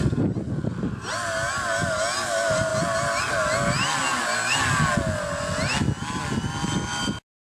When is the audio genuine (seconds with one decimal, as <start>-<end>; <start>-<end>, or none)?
0.0-7.4